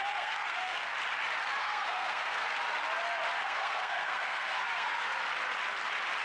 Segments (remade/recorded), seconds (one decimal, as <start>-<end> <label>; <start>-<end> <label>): 0.0-0.9 remade; 0.9-1.6 recorded; 1.6-2.4 remade; 2.4-3.4 recorded; 3.4-5.1 remade; 5.1-6.2 recorded